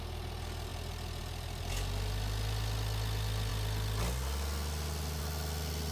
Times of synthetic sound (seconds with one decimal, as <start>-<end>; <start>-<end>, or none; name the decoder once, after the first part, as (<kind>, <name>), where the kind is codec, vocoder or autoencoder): none